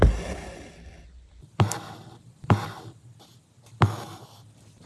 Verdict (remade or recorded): recorded